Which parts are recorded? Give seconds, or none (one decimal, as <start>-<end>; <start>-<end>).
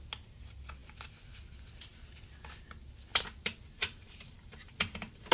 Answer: 0.0-0.8; 1.3-3.1